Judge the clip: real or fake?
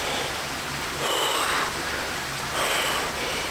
real